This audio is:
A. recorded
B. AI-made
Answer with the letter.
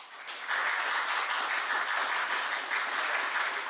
A